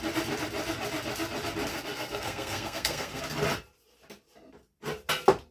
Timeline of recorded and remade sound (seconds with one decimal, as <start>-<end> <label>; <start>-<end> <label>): 0.0-1.7 recorded; 1.7-3.2 remade; 3.2-5.5 recorded